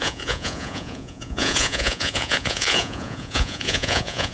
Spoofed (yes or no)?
yes